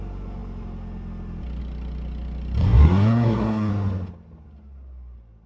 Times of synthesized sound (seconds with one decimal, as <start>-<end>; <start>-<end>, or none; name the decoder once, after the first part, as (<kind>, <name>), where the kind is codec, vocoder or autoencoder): 2.6-3.7 (codec, SNAC)